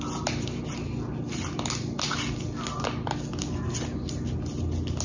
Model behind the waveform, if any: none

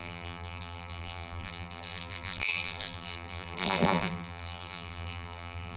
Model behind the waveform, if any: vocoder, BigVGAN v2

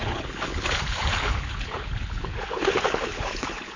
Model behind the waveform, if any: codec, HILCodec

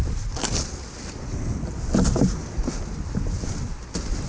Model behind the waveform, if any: none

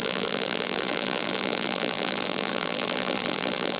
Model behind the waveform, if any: vocoder, BigVGAN v2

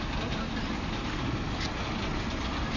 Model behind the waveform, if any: none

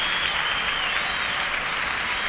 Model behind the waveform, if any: none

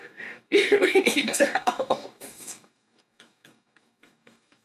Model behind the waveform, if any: codec, DAC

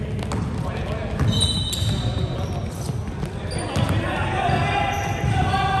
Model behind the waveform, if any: none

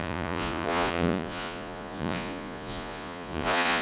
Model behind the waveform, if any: vocoder, Vocos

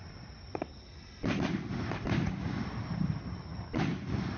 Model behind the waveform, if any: none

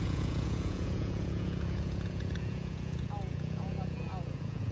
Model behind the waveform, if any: vocoder, Vocos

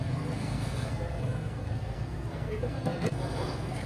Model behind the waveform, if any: codec, SNAC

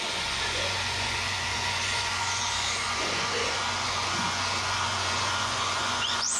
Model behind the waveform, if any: vocoder, Vocos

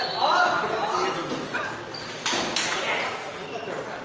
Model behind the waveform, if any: none